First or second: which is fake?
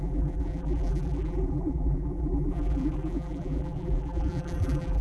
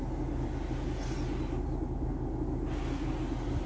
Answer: first